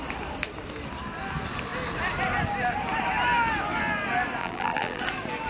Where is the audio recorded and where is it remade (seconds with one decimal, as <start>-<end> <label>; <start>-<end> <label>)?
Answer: 0.0-4.4 recorded; 4.4-5.0 remade; 5.0-5.5 recorded